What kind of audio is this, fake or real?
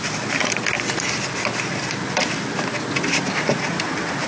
real